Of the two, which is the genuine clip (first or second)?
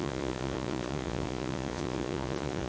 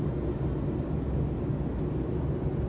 second